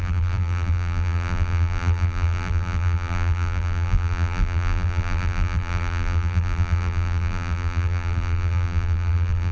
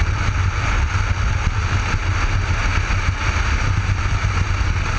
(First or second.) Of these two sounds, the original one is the second